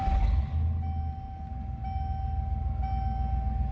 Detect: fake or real real